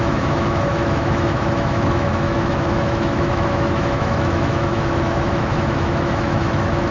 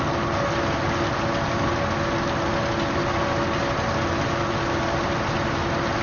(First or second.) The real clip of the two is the second